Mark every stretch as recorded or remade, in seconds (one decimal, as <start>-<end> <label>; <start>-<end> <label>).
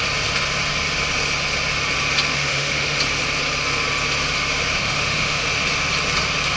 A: 0.0-2.3 recorded; 2.3-3.0 remade; 3.0-4.8 recorded; 4.8-5.4 remade; 5.4-6.6 recorded